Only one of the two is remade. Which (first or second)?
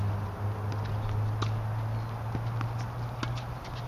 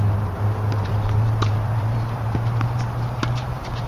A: second